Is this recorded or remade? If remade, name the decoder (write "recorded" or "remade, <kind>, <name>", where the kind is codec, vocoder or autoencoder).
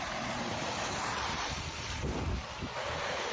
remade, vocoder, BigVGAN v2